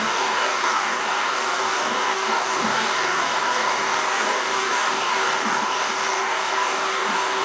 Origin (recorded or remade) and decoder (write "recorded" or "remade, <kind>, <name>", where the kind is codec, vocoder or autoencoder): remade, codec, DAC